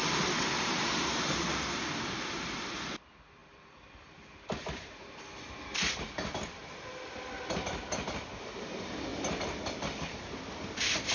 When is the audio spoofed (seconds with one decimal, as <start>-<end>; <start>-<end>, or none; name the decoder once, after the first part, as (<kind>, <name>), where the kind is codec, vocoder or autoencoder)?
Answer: 0.0-0.7 (vocoder, BigVGAN v2); 3.4-4.9